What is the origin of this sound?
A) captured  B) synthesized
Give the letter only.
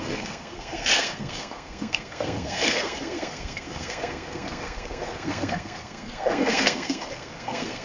B